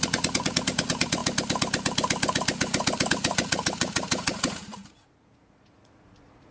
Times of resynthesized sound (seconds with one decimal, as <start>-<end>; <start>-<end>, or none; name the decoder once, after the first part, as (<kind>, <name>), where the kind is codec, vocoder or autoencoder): 0.0-1.2 (vocoder, Vocos); 3.1-6.5